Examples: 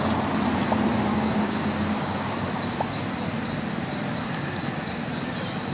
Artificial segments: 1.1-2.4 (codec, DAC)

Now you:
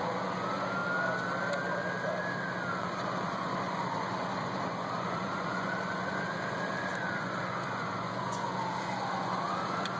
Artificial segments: 0.0-0.8 (vocoder, Vocos); 2.7-10.0

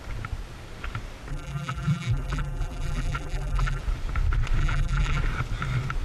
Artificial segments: 1.3-3.8 (vocoder, BigVGAN v2); 4.6-5.2

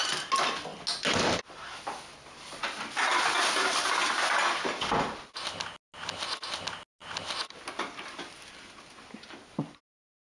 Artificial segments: none

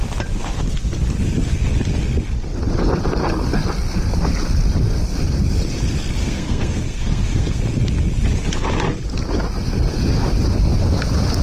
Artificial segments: 6.2-7.6 (codec, SNAC)

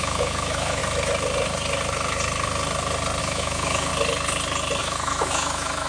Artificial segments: 0.0-0.8 (autoencoder, DAC-VAE); 3.2-3.9; 4.8-5.9

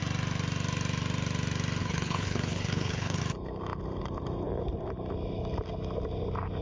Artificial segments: 1.8-3.2 (codec, HILCodec)

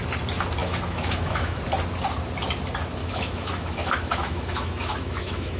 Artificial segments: 0.6-1.6 (autoencoder, DAC-VAE); 3.0-5.6